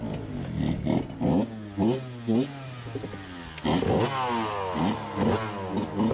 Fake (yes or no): no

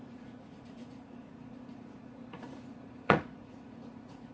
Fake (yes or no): yes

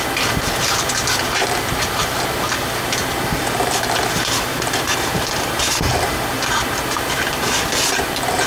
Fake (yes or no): yes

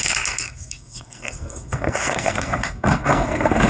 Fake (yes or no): yes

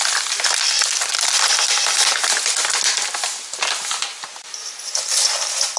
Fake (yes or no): no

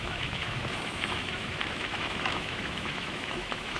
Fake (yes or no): yes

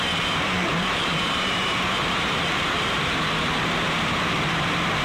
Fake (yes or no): yes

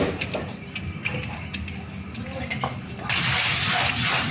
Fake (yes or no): no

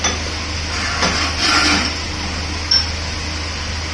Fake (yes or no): no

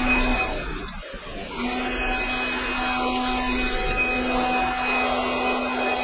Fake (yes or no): no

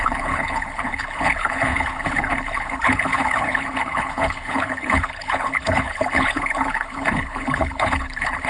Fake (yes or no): yes